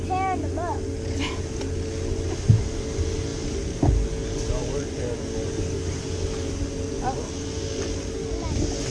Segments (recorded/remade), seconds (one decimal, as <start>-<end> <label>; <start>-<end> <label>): 0.0-8.9 recorded